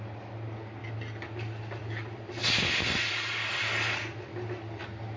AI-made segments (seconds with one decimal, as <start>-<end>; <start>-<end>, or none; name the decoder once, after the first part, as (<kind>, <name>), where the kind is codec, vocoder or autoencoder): none